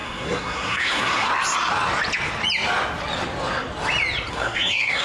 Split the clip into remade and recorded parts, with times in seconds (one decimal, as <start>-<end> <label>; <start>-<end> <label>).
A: 0.0-1.3 remade; 1.3-4.3 recorded; 4.3-5.0 remade